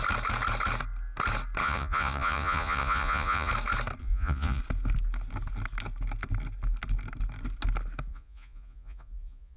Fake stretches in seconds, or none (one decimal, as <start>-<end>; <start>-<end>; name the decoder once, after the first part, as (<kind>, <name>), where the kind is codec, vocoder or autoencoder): 1.6-3.5 (vocoder, Vocos); 4.0-4.6; 8.1-9.6